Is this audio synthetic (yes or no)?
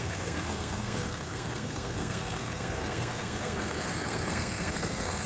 yes